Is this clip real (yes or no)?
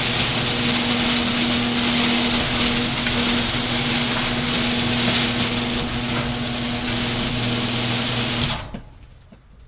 yes